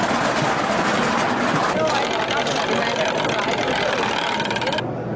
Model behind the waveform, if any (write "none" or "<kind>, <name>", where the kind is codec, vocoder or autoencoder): none